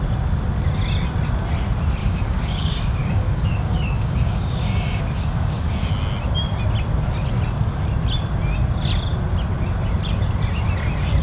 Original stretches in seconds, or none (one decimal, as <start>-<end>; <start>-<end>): 0.0-2.0; 5.9-11.2